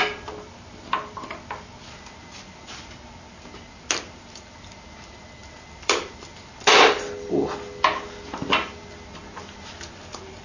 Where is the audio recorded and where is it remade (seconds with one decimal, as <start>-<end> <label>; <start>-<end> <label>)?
0.0-10.4 recorded